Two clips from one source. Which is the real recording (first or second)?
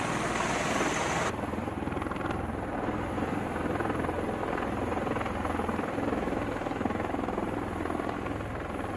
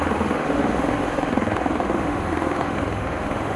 first